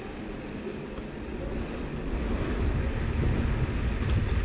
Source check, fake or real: real